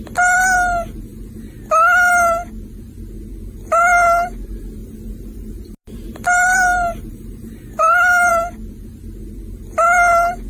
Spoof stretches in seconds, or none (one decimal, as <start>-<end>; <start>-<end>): 4.8-8.3